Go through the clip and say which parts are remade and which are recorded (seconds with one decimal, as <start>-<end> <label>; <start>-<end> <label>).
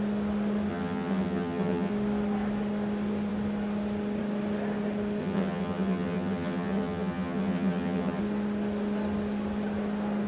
0.0-0.7 recorded; 0.7-1.9 remade; 1.9-5.2 recorded; 5.2-8.2 remade; 8.2-10.3 recorded